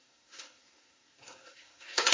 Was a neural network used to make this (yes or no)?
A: yes